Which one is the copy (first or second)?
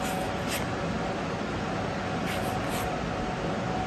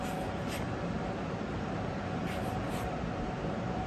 second